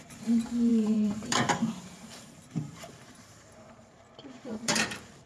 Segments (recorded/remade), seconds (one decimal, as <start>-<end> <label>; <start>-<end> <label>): 0.0-5.3 remade